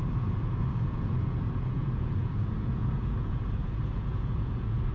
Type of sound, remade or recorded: remade